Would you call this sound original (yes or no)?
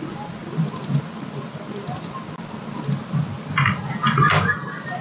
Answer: yes